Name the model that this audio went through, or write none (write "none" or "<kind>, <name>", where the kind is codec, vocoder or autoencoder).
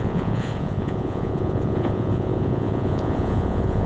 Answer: vocoder, Vocos